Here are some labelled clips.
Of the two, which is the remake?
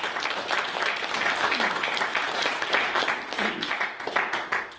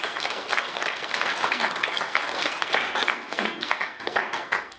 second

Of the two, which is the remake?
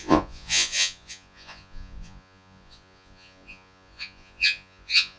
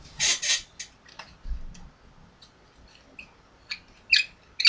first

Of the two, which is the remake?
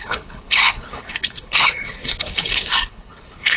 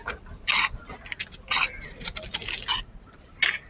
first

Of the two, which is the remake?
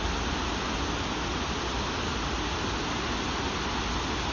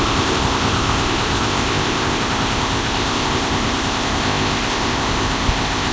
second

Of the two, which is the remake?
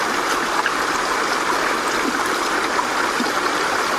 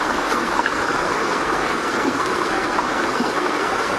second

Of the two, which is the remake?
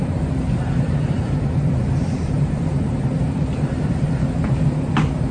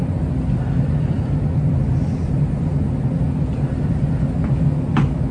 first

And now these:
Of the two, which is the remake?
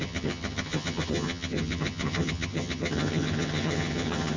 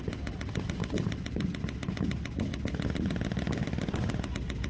first